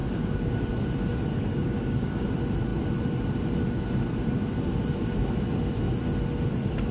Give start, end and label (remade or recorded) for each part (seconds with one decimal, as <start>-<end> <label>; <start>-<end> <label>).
0.0-0.7 remade; 0.7-1.3 recorded; 1.3-2.3 remade; 2.3-6.9 recorded